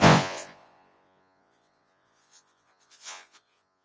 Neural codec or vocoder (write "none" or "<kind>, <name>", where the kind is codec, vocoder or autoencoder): vocoder, Vocos